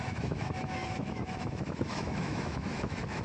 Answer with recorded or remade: remade